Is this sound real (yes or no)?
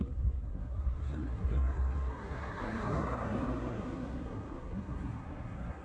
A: no